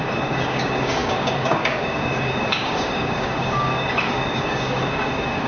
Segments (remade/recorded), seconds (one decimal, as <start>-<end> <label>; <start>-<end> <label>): 0.0-5.5 remade